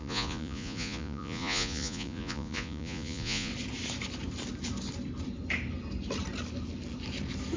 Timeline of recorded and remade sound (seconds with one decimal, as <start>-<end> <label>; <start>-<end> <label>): 0.0-3.5 remade; 3.5-7.6 recorded